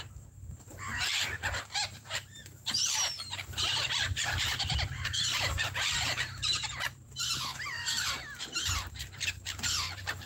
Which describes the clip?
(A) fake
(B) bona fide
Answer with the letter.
A